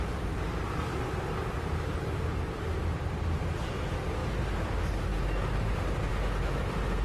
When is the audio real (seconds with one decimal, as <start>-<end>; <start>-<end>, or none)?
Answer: 0.0-7.0